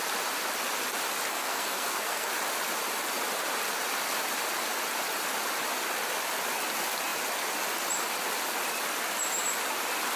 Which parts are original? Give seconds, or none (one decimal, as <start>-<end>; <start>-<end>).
0.0-1.3; 2.3-10.2